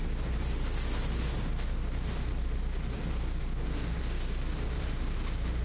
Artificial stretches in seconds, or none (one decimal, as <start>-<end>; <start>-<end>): none